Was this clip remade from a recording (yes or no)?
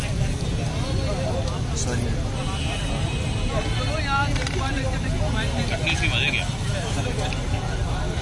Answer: no